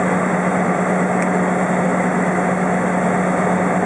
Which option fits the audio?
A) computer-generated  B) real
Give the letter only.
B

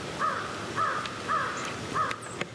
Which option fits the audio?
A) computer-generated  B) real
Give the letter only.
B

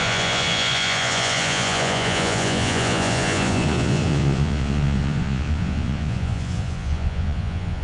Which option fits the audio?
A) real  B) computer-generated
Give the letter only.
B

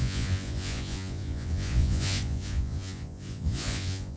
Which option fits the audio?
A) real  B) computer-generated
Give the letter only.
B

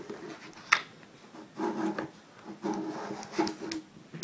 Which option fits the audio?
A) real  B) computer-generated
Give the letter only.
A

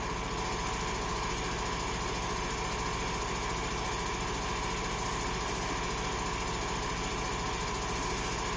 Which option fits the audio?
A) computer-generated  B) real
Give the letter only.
B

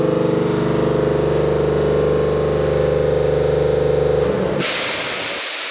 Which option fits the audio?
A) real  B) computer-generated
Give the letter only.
A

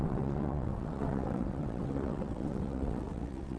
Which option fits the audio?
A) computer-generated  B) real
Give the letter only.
A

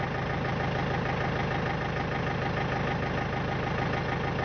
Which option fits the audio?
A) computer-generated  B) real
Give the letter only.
B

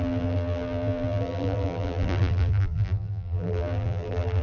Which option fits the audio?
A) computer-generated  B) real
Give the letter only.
A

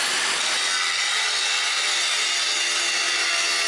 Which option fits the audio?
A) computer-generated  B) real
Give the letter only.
B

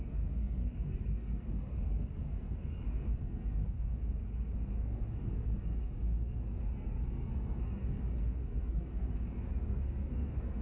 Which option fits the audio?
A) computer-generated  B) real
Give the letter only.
A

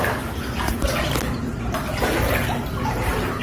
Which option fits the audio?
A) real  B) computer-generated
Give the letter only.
A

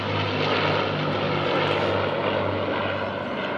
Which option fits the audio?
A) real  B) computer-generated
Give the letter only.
A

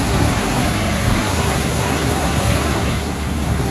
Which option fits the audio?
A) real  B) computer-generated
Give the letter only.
B